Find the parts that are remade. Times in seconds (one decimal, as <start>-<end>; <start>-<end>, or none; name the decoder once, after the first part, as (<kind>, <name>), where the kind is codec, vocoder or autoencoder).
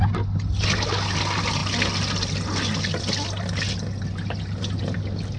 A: none